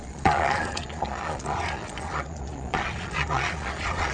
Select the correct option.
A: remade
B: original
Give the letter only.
A